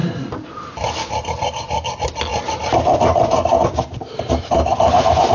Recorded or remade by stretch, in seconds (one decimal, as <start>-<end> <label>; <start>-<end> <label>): 0.0-5.3 recorded